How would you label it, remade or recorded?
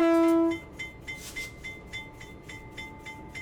recorded